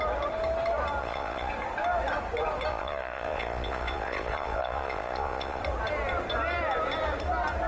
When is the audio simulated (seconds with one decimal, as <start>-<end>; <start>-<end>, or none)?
1.0-1.5; 2.7-5.6